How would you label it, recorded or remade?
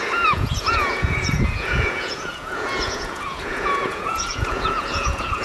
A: remade